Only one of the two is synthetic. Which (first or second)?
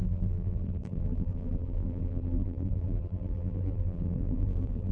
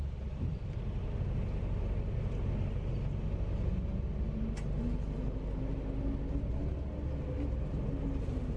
first